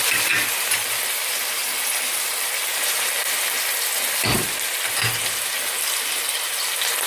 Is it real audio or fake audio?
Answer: real